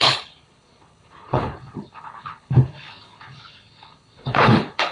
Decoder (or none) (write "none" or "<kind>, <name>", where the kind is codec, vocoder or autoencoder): codec, HILCodec